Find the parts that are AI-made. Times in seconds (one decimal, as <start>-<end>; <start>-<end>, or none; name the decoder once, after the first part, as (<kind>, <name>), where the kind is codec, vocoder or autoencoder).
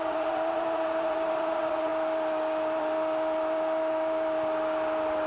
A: 0.0-1.9 (vocoder, Vocos)